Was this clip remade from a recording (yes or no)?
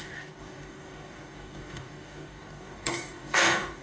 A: yes